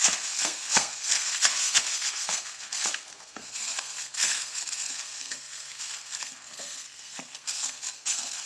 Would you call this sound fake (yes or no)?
yes